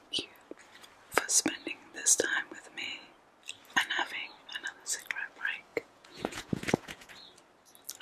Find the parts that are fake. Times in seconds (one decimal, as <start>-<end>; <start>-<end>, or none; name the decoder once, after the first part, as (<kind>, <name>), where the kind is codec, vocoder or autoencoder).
5.7-7.1 (vocoder, Vocos)